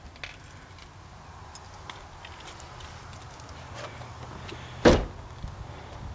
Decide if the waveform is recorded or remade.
recorded